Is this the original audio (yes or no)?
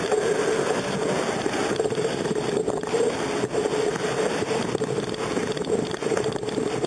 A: yes